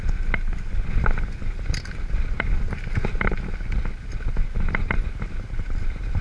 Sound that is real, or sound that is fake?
real